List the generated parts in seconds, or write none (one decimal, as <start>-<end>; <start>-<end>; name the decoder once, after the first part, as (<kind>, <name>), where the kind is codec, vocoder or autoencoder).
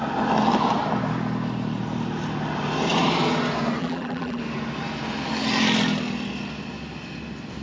3.8-4.4 (vocoder, BigVGAN v2)